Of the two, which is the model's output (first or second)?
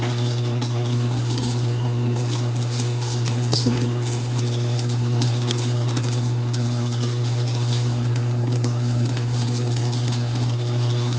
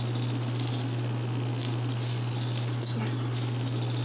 first